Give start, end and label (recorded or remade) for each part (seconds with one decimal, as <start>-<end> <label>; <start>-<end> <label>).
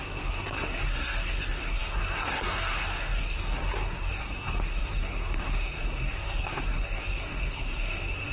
0.0-8.3 remade